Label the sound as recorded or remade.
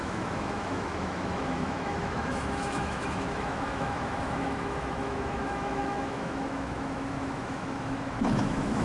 remade